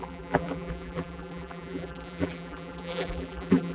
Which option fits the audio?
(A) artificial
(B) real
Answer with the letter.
A